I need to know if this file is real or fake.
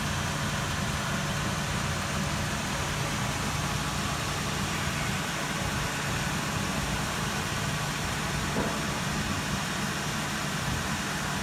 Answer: real